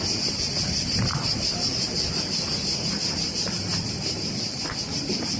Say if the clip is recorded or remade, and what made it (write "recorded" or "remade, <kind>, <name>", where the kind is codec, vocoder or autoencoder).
recorded